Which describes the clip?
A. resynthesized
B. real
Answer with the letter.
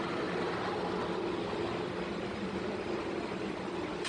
B